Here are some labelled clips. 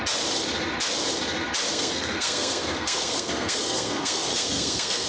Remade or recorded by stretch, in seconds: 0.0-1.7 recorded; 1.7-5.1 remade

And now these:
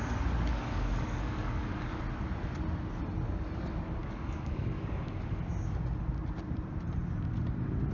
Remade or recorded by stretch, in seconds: 0.0-0.5 recorded; 0.5-2.0 remade; 2.0-4.0 recorded; 4.0-5.4 remade; 5.4-7.9 recorded

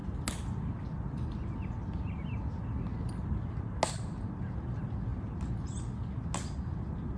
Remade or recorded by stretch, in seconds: 0.0-7.2 recorded

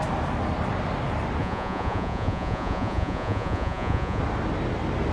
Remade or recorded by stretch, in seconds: 0.0-1.4 recorded; 1.4-4.2 remade; 4.2-5.1 recorded

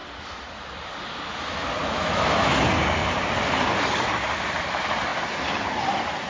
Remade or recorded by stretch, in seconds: 0.0-1.8 recorded; 1.8-2.5 remade; 2.5-6.3 recorded

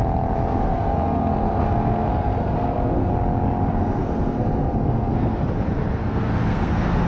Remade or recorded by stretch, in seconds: 0.0-0.6 recorded; 0.6-3.1 remade; 3.1-3.6 recorded; 3.6-5.4 remade; 5.4-6.0 recorded; 6.0-7.1 remade